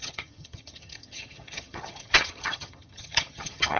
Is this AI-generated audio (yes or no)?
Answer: yes